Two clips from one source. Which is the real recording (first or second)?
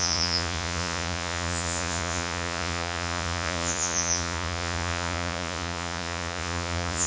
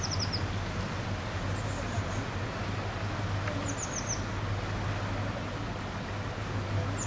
second